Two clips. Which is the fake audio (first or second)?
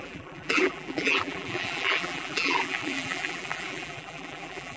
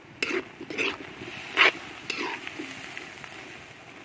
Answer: first